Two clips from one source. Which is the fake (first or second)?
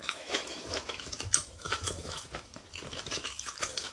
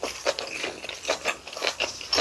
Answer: first